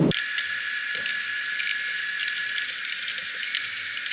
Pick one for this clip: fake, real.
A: real